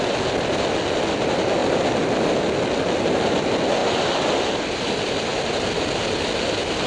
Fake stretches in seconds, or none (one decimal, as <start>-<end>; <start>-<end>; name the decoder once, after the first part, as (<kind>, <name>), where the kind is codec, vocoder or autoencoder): none